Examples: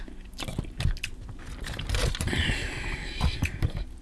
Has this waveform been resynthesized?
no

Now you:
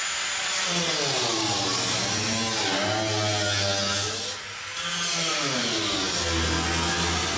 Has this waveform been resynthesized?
no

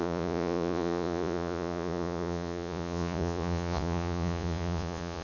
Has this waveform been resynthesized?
yes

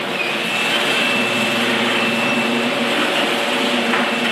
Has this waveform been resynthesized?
no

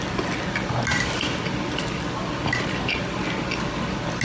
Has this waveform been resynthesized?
no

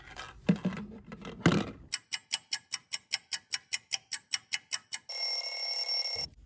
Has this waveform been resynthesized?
no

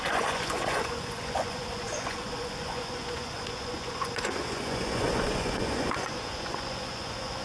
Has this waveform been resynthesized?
yes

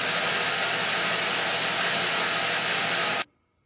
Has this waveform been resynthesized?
no